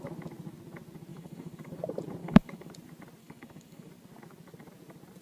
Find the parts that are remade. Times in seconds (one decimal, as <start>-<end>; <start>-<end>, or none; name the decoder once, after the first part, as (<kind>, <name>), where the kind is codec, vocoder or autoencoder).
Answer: 1.1-1.7 (codec, DAC); 2.2-2.7; 3.2-3.9